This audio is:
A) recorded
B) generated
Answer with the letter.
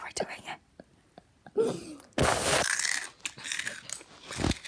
A